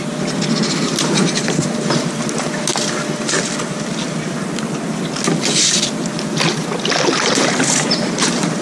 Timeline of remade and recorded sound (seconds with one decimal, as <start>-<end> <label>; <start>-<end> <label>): 0.0-2.7 remade; 2.7-7.4 recorded; 7.4-8.6 remade